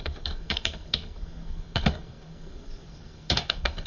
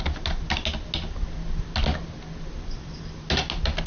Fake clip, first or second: first